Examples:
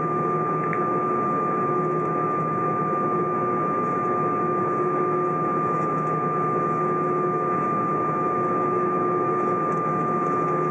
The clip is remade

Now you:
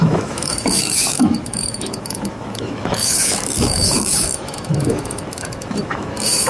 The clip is remade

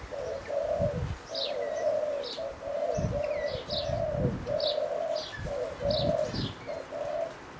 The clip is recorded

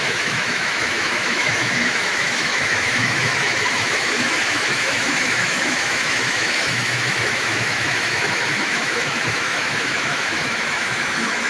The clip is remade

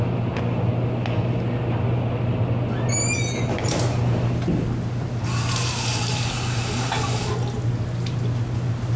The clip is recorded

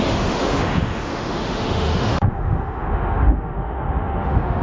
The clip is remade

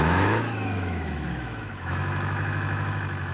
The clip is remade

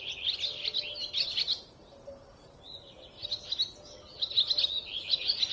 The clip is recorded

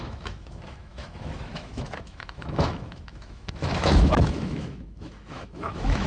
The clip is remade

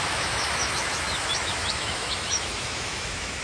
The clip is remade